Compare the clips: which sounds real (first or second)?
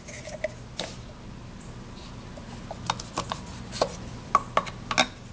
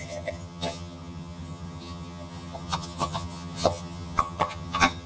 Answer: first